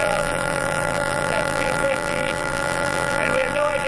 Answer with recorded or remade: remade